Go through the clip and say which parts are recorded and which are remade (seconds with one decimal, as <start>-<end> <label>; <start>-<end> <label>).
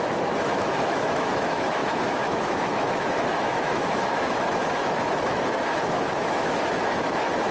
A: 0.0-7.5 remade